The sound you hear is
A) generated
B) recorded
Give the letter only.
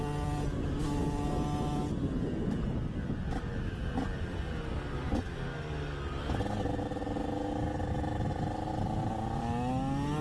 B